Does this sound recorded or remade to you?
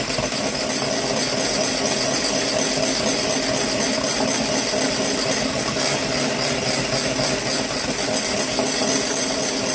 recorded